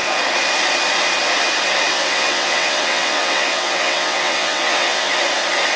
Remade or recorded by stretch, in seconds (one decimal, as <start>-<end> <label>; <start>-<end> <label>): 0.0-1.9 recorded; 1.9-5.1 remade; 5.1-5.8 recorded